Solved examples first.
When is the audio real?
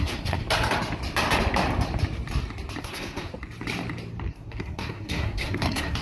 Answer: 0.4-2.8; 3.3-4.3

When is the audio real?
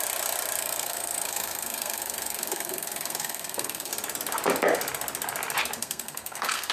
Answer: 0.0-0.6; 3.9-5.8